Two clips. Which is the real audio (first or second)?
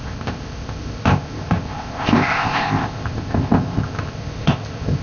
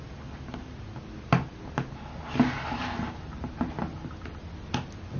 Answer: second